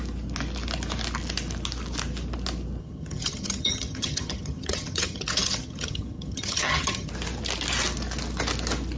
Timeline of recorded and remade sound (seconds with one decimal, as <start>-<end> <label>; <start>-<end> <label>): 0.0-2.8 recorded; 2.8-7.1 remade; 7.1-9.0 recorded